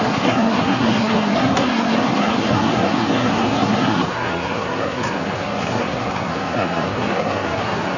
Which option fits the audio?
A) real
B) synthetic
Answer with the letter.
B